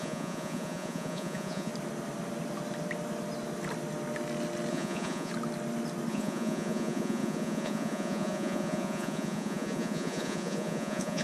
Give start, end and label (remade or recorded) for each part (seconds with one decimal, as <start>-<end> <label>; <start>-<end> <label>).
0.0-1.7 remade; 1.7-4.7 recorded; 4.7-5.3 remade; 5.3-6.1 recorded; 6.1-11.2 remade